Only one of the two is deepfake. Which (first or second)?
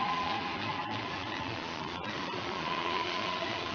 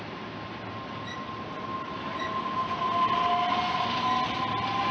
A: first